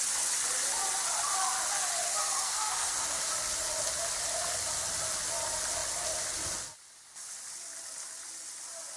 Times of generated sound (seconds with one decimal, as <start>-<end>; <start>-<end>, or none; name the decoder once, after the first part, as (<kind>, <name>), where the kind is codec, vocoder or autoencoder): 2.2-3.2 (codec, SNAC)